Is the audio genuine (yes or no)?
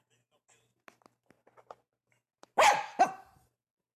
yes